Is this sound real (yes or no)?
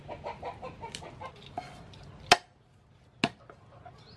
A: yes